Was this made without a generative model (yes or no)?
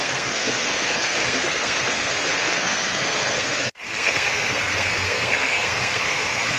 no